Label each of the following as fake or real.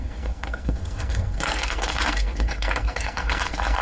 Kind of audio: fake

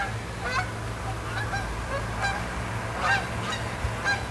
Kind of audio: real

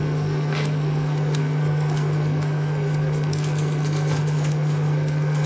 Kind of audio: fake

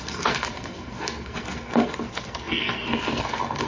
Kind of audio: fake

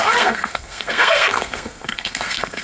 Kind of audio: fake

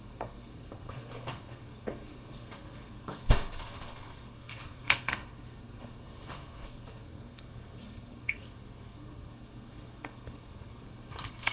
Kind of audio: fake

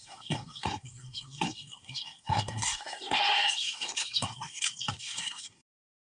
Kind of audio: fake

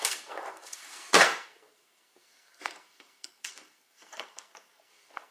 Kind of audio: fake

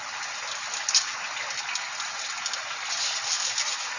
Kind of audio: real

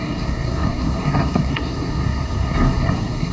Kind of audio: fake